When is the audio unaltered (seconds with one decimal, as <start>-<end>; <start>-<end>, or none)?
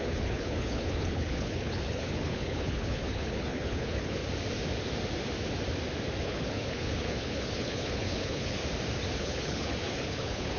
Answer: 4.2-6.2; 8.6-9.2